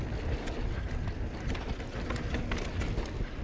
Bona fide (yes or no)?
yes